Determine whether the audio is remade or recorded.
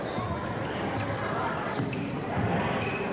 recorded